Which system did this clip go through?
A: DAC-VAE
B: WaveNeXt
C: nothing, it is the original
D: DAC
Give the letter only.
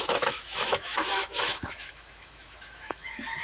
A